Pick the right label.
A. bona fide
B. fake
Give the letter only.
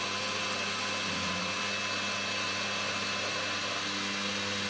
A